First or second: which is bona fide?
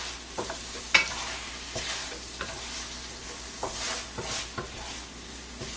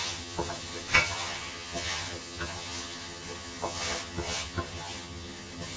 first